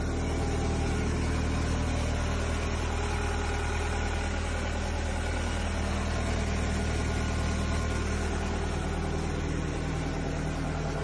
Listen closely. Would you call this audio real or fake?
real